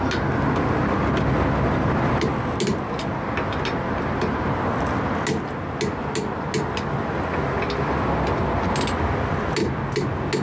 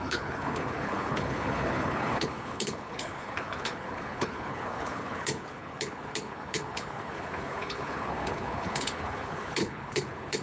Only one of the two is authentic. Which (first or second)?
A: first